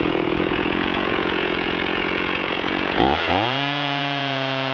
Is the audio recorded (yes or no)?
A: no